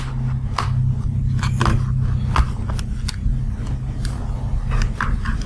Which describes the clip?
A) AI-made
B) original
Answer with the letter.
B